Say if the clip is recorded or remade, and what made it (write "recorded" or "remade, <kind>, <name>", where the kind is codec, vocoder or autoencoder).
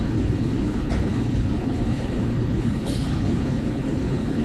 remade, codec, HILCodec